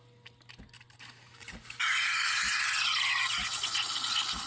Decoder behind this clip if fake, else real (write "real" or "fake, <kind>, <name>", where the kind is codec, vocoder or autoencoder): real